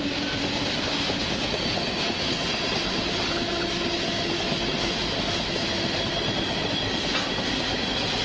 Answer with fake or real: real